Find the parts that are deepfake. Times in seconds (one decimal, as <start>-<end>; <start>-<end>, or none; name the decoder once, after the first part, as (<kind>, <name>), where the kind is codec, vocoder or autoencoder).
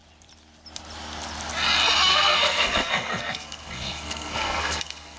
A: 2.1-5.2 (codec, SNAC)